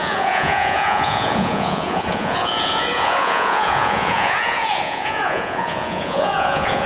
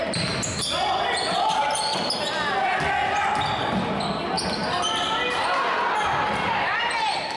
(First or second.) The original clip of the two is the second